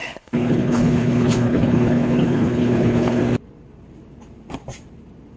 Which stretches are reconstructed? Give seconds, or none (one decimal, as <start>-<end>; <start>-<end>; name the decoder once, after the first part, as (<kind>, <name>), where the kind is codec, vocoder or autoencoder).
0.0-3.2 (codec, HILCodec)